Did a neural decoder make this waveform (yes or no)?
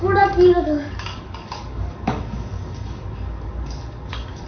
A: yes